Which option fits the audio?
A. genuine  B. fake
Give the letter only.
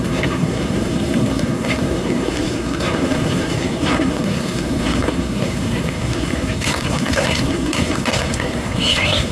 B